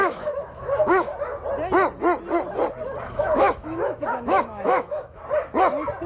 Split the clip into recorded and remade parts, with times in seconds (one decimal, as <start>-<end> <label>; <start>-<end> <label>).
0.0-1.1 remade; 1.1-3.1 recorded; 3.1-5.2 remade; 5.2-6.1 recorded